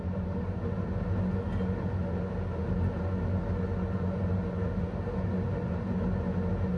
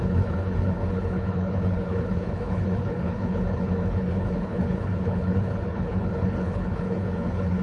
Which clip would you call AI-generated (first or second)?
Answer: second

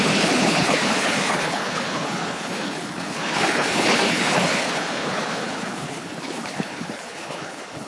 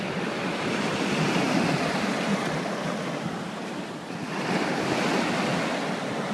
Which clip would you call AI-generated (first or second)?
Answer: first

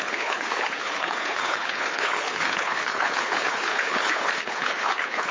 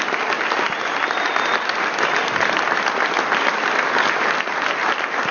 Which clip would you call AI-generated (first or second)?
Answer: first